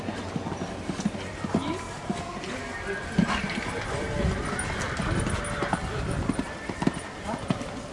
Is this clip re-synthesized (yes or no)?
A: no